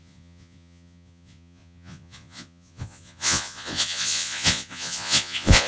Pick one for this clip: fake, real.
fake